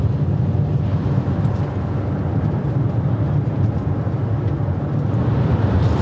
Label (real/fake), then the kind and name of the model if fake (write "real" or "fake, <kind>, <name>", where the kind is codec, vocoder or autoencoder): real